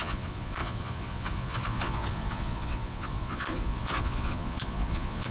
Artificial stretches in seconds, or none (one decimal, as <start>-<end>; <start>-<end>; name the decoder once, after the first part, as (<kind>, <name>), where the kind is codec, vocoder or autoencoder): 0.0-5.3 (vocoder, Vocos)